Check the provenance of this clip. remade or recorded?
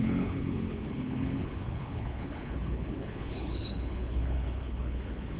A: remade